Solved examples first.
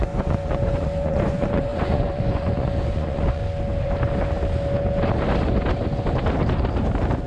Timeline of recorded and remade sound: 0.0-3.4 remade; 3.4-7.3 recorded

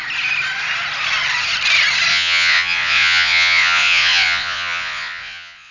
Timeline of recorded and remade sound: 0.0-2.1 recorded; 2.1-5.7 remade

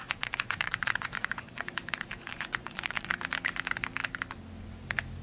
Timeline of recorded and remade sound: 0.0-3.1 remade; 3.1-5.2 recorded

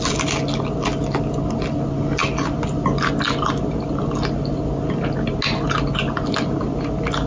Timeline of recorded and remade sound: 0.0-7.3 recorded